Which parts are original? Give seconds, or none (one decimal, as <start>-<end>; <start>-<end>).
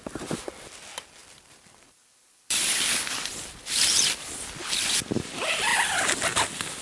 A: 0.0-1.2; 5.1-6.8